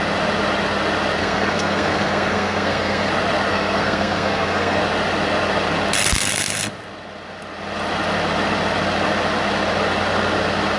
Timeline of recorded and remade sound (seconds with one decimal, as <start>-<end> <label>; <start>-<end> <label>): 0.0-1.2 recorded; 1.2-3.1 remade; 3.1-3.5 recorded; 3.5-4.8 remade; 4.8-10.8 recorded